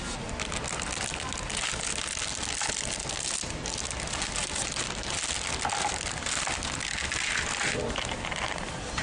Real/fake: real